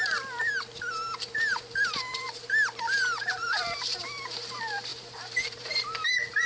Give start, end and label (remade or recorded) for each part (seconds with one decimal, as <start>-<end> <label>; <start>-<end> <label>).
0.0-3.2 recorded; 3.2-4.0 remade; 4.0-4.9 recorded; 4.9-5.6 remade; 5.6-6.5 recorded